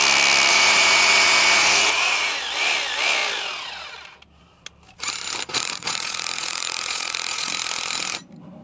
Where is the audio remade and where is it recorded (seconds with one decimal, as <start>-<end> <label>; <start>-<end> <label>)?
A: 0.0-0.5 recorded; 0.5-2.4 remade; 2.4-5.5 recorded; 5.5-7.5 remade; 7.5-8.6 recorded